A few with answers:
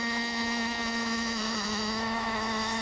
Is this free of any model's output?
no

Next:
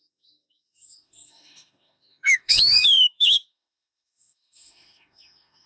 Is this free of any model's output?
no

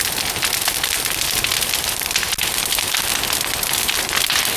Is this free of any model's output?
yes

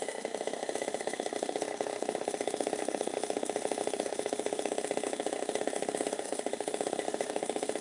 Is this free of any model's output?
no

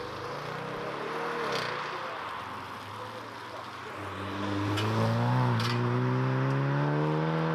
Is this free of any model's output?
yes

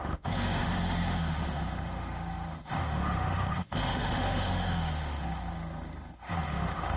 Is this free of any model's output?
no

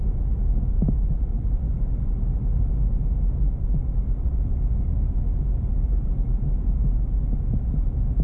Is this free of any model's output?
yes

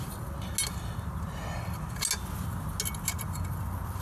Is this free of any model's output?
yes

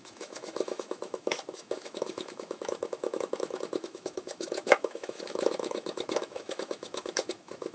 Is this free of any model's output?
no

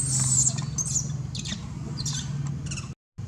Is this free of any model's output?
yes